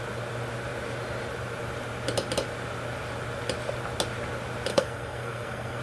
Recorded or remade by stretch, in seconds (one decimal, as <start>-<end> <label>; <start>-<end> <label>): 0.0-4.7 recorded; 4.7-5.8 remade